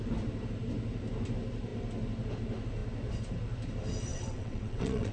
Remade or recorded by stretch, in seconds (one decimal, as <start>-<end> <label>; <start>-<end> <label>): 0.0-4.1 recorded; 4.1-5.1 remade